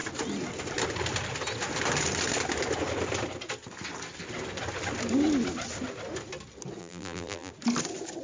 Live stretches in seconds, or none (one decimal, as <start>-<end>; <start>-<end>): 0.0-6.8; 7.5-8.2